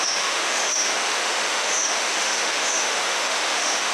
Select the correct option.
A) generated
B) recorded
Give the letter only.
A